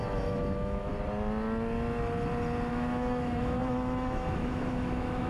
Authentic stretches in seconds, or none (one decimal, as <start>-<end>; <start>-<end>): 0.9-2.7